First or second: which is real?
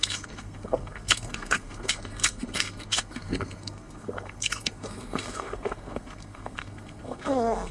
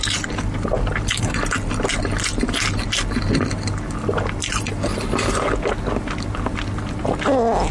second